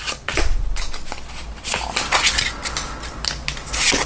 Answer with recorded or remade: recorded